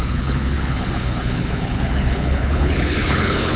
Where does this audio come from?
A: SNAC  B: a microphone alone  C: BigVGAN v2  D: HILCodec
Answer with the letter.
D